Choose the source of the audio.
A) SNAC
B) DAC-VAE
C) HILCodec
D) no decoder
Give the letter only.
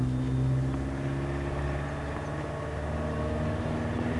D